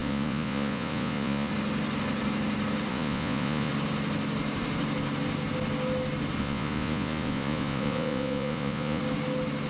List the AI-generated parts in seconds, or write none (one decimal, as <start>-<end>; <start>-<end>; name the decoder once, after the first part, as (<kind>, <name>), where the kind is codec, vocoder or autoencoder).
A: 0.0-1.5 (vocoder, Vocos); 2.9-3.7; 6.4-9.0